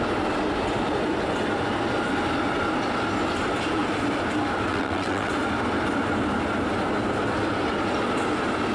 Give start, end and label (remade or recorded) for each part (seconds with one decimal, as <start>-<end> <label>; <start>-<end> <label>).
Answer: 0.0-4.7 recorded; 4.7-5.3 remade; 5.3-8.7 recorded